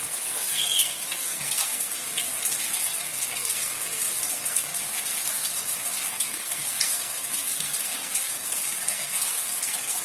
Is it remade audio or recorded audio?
remade